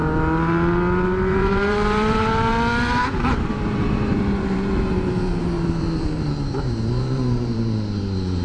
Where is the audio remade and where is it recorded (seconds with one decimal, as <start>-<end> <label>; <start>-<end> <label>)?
0.0-1.3 recorded; 1.3-2.5 remade; 2.5-3.0 recorded; 3.0-8.4 remade